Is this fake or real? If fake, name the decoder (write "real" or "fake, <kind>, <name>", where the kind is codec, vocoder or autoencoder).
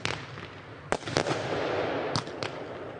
real